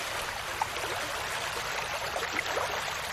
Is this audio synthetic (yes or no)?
yes